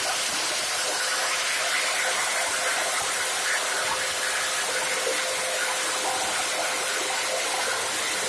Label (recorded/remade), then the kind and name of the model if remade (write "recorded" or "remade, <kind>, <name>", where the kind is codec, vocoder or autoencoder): recorded